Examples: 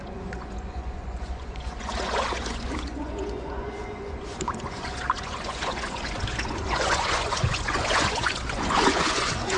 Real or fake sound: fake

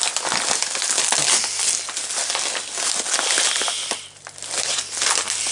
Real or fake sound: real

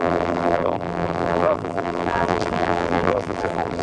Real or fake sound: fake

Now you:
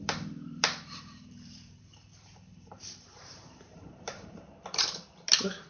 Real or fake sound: fake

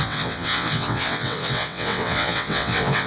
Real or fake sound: fake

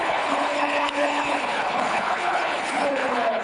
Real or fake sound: fake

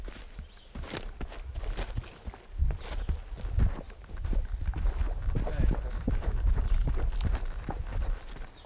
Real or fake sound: real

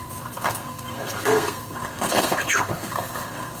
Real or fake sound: fake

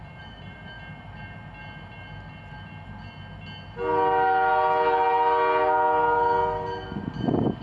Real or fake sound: real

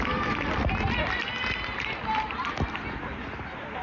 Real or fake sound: real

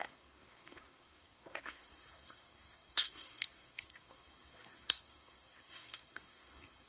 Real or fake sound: fake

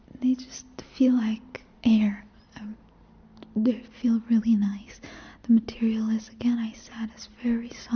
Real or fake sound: real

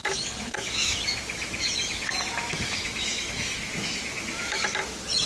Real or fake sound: fake